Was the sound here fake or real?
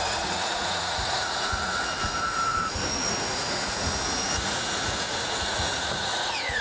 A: fake